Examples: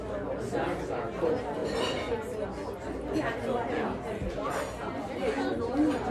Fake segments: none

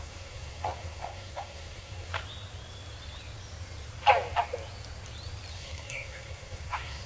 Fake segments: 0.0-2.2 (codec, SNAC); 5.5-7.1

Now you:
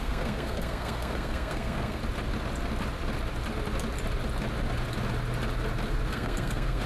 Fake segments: 0.0-2.0 (codec, SNAC); 6.1-6.9